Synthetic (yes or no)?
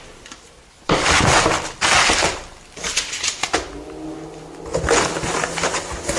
no